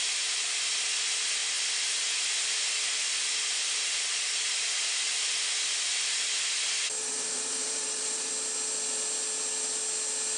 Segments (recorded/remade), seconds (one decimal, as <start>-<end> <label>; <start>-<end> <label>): 0.0-7.0 recorded; 7.0-8.3 remade; 8.3-10.4 recorded